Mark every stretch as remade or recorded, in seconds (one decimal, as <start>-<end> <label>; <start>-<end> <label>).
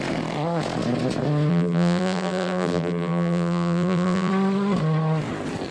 0.0-1.5 recorded; 1.5-4.3 remade; 4.3-5.7 recorded